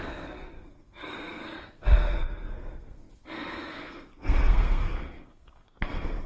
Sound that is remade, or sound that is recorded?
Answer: remade